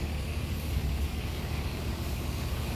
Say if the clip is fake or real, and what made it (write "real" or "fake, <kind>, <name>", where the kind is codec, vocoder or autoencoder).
fake, codec, DAC